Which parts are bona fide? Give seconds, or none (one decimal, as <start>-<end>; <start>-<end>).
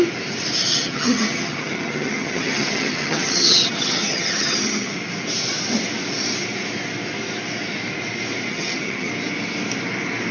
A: 0.0-0.7; 4.9-8.5; 9.1-10.3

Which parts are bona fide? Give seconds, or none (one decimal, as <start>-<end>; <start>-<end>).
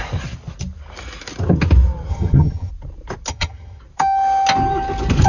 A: 0.0-2.1; 2.7-3.3; 3.8-5.3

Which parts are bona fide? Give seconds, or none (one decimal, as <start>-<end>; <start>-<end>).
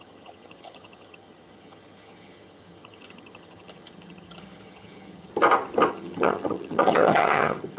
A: 5.3-5.9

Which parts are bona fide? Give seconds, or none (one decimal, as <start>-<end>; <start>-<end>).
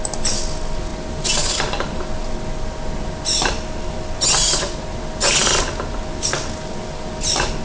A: 0.0-7.6